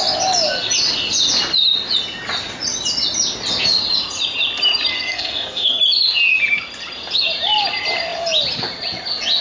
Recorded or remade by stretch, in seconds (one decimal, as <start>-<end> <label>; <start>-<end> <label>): 0.0-4.9 recorded; 4.9-5.8 remade; 5.8-9.4 recorded